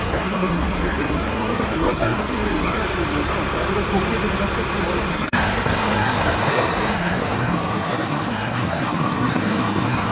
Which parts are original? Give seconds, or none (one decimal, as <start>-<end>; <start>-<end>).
2.8-5.1